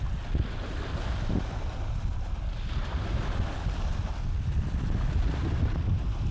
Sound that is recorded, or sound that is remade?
recorded